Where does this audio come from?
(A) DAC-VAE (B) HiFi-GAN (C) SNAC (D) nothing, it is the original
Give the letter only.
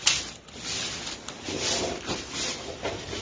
D